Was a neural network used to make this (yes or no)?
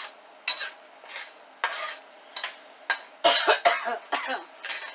no